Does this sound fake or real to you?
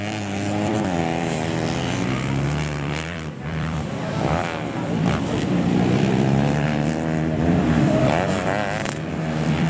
fake